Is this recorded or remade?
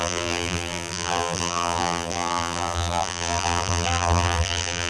remade